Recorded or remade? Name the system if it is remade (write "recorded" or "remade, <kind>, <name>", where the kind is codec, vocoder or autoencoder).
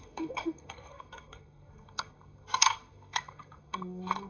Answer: remade, codec, SNAC